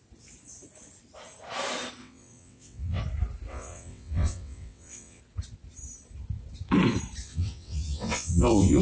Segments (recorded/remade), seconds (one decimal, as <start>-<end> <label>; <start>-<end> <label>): 0.0-2.0 recorded; 2.0-3.0 remade; 3.0-3.5 recorded; 3.5-5.2 remade; 5.2-7.2 recorded; 7.2-8.8 remade

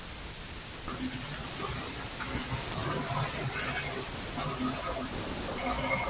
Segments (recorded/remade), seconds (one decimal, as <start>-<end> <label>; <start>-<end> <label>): 0.0-2.8 recorded; 2.8-4.6 remade; 4.6-6.1 recorded

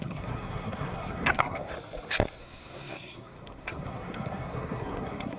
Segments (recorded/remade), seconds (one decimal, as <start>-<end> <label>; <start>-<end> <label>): 0.0-1.7 remade; 1.7-2.4 recorded; 2.4-5.4 remade

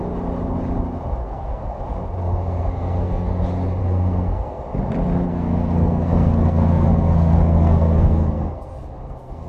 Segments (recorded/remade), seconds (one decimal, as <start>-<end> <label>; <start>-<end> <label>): 0.0-1.2 recorded; 1.2-1.8 remade; 1.8-2.2 recorded; 2.2-3.4 remade; 3.4-3.8 recorded; 3.8-4.6 remade; 4.6-5.3 recorded; 5.3-9.5 remade